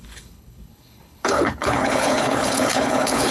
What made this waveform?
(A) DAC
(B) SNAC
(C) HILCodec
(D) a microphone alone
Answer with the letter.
C